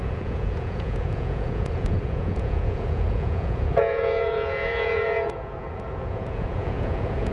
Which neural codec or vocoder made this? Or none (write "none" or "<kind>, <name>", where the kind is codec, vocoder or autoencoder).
vocoder, Vocos